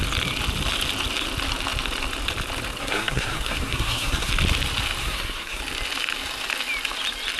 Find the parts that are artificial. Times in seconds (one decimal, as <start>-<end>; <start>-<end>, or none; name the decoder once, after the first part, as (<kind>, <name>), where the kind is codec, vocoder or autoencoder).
2.8-4.3 (codec, SNAC); 5.0-5.6